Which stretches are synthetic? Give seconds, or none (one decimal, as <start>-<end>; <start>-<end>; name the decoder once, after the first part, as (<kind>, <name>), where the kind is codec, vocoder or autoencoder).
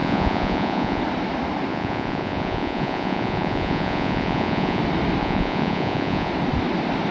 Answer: 0.0-1.0 (vocoder, Vocos); 1.7-4.8; 5.2-6.3